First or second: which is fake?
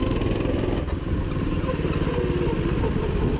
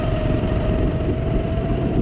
second